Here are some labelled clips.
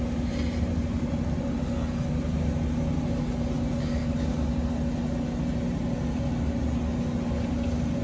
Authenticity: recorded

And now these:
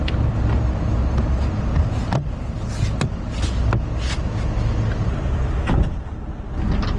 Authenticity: recorded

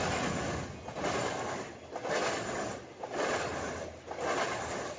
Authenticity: recorded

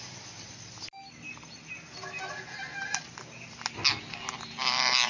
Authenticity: recorded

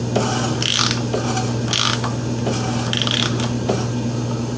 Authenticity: recorded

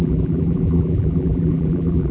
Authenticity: remade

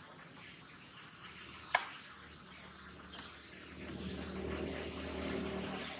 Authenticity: recorded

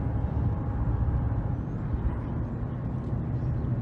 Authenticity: recorded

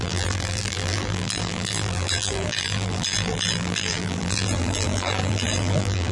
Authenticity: remade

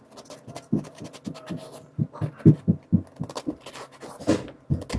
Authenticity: recorded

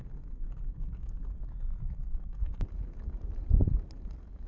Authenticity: recorded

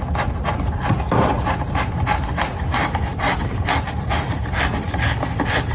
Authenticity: recorded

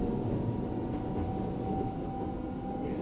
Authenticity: recorded